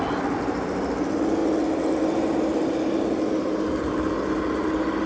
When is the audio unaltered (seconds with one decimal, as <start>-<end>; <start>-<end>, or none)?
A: 0.0-5.1